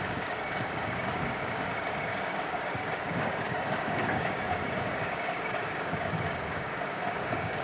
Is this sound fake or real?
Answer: fake